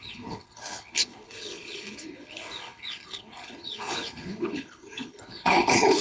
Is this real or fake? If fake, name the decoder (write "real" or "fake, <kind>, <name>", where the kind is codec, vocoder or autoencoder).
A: fake, codec, HILCodec